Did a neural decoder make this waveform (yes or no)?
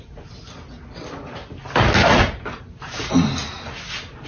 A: no